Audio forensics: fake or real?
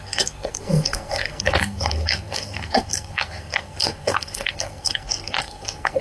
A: fake